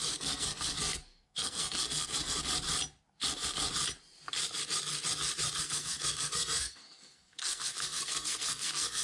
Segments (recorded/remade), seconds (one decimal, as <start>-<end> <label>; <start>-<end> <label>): 0.0-2.4 remade; 2.4-5.6 recorded; 5.6-9.0 remade